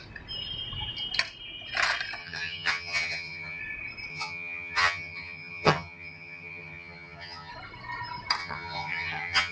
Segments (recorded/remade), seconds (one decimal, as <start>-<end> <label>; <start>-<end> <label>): 0.0-2.2 recorded; 2.2-3.6 remade; 3.6-4.1 recorded; 4.1-7.5 remade; 7.5-8.4 recorded; 8.4-9.5 remade